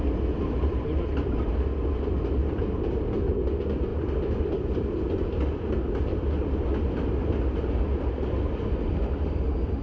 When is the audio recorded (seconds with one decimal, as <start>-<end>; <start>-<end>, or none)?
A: 0.0-9.8